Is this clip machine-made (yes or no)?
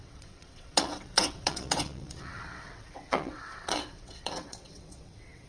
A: yes